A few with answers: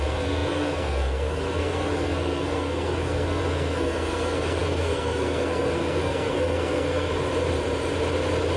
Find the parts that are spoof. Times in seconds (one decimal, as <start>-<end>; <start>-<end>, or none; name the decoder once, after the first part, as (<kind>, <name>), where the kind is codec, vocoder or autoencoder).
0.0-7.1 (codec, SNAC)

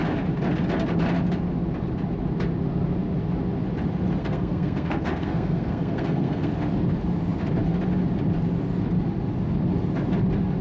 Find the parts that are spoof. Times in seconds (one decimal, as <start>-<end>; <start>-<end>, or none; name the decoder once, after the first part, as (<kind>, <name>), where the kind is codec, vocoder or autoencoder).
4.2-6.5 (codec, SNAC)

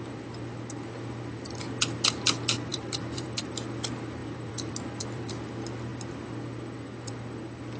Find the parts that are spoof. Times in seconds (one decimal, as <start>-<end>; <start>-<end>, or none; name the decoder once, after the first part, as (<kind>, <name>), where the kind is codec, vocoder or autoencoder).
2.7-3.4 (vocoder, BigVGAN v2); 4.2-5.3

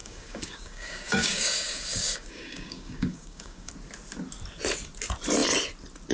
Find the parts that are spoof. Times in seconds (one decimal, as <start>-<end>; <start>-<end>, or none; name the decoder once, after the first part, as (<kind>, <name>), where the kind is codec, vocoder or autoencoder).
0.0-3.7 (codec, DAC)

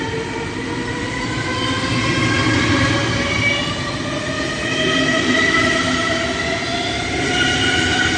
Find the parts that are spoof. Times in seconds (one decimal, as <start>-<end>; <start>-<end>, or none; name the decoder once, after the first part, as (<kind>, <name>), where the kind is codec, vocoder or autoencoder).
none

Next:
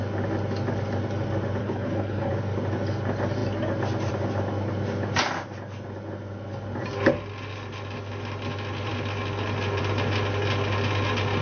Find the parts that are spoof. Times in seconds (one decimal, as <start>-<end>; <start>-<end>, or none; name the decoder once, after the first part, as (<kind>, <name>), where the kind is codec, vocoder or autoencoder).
1.6-2.3 (codec, HILCodec)

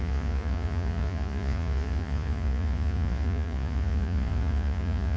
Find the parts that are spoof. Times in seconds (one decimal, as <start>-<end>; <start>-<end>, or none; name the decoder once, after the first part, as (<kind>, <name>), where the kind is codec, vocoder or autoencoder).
0.0-5.2 (vocoder, Vocos)